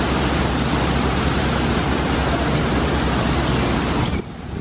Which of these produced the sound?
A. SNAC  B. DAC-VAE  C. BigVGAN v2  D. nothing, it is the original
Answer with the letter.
D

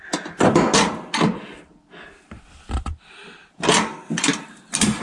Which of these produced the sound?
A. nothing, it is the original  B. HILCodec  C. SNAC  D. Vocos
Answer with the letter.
A